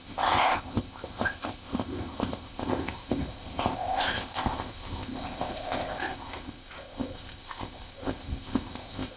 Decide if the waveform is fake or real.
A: fake